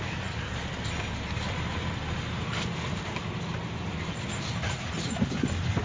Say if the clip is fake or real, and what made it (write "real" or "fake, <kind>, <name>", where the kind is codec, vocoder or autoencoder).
real